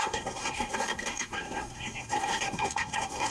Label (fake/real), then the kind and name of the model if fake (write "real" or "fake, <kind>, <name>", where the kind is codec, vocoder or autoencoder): fake, codec, SNAC